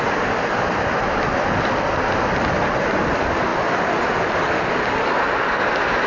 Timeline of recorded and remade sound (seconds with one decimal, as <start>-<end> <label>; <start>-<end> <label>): 0.0-6.1 recorded